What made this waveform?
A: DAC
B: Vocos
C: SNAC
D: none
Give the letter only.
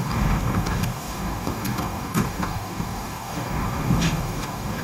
A